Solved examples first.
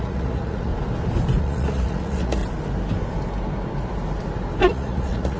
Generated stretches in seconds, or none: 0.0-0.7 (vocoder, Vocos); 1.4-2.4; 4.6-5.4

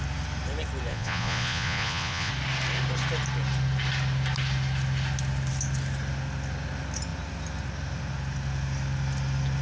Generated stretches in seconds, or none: 0.9-2.3 (vocoder, Vocos)

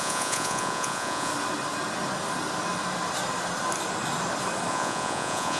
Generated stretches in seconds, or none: 0.0-1.3 (vocoder, Vocos); 4.7-5.6

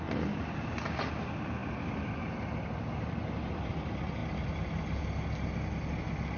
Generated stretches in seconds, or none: none

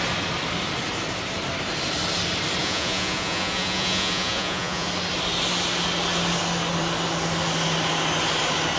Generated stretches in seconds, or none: 2.6-4.9 (vocoder, Vocos)

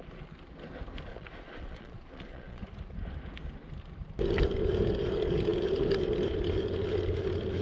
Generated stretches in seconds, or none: 1.1-2.6 (vocoder, Vocos)